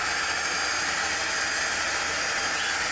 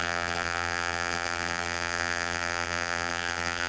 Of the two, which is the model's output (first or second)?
second